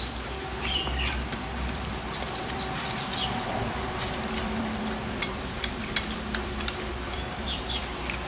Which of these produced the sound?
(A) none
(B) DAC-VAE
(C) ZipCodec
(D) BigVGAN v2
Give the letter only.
D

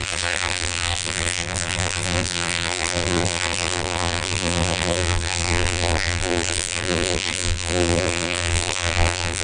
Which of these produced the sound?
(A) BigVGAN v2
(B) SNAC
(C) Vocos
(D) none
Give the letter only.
A